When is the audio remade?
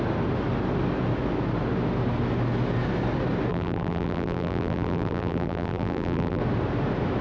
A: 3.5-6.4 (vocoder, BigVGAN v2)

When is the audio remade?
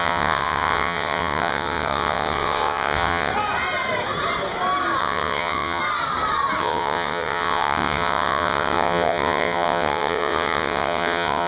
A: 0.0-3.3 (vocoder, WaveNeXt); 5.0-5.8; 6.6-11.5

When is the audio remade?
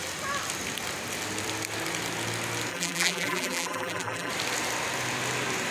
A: 2.7-4.3 (vocoder, BigVGAN v2)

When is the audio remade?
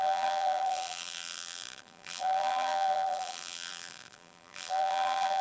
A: 0.0-5.4 (vocoder, BigVGAN v2)